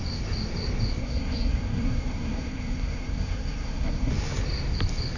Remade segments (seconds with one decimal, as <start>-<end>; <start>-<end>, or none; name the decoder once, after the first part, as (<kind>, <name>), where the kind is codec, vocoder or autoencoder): 1.0-4.1 (codec, SNAC)